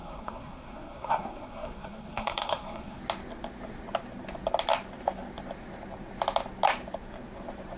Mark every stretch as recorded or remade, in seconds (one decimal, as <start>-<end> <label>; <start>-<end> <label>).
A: 0.0-3.0 remade; 3.0-7.8 recorded